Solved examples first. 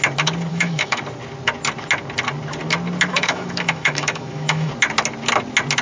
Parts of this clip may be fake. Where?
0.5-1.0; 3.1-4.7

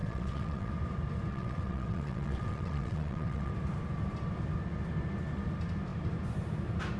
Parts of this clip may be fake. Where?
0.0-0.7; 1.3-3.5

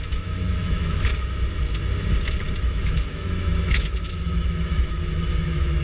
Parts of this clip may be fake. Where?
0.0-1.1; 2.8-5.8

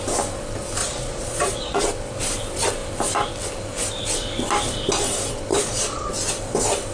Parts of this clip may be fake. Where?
0.8-1.8; 5.5-6.1